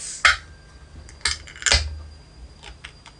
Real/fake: real